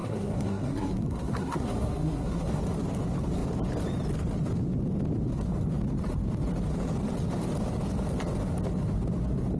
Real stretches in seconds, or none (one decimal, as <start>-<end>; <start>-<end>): 2.6-9.6